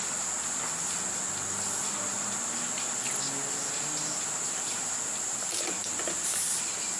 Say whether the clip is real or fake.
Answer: real